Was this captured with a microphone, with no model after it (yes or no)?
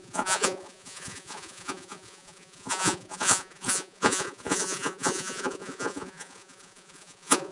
no